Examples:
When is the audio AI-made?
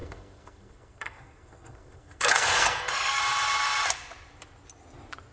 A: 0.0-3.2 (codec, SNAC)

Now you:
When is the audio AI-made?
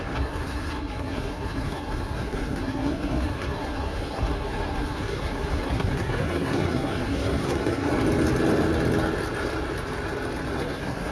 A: 0.0-7.9 (codec, SNAC); 10.5-11.1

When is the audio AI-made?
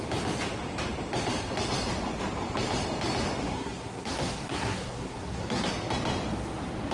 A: 3.4-5.7 (codec, SNAC)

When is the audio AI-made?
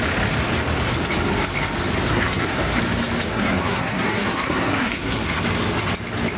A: 2.1-2.8 (codec, SNAC); 3.3-5.4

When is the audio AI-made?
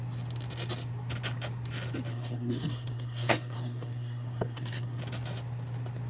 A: 2.1-5.0 (codec, SNAC)